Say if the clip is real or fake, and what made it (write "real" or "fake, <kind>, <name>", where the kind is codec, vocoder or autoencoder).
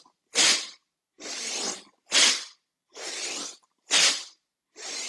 real